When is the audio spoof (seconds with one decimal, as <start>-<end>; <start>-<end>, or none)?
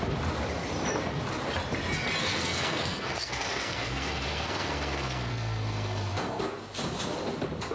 2.2-6.4